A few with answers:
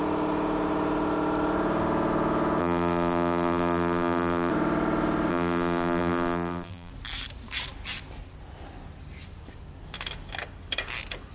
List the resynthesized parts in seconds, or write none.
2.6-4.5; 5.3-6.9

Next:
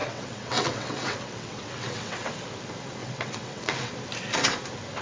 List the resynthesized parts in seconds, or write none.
0.0-2.3; 3.0-3.9

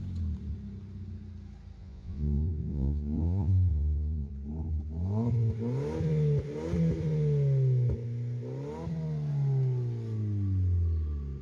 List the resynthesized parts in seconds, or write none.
1.8-4.3

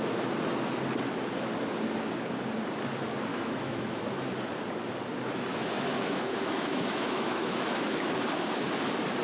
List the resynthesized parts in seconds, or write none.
3.3-4.0; 5.5-8.1

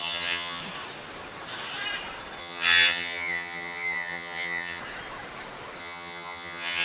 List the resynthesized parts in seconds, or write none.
0.0-0.6; 2.4-4.8; 5.8-6.8

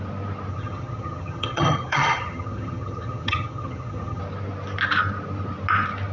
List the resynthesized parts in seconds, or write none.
0.5-4.2